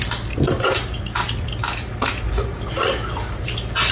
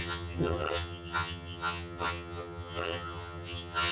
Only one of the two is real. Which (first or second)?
first